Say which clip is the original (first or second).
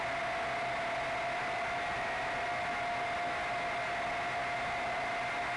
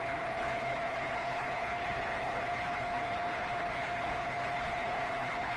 first